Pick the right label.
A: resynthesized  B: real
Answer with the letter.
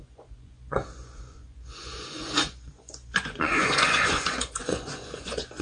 A